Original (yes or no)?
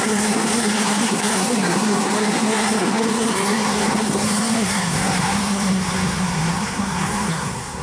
no